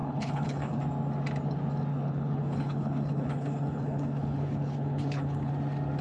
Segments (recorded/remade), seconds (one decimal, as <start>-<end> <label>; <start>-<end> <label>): 0.0-0.8 remade; 0.8-1.9 recorded; 1.9-5.5 remade; 5.5-6.0 recorded